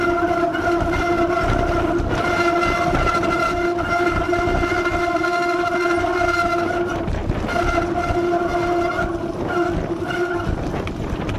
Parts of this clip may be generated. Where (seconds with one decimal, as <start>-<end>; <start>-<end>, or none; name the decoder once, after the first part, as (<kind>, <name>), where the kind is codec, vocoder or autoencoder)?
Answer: none